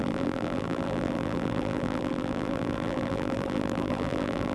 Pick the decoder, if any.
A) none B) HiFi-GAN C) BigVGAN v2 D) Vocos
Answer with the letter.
C